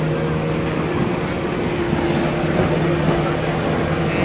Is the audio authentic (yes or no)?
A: yes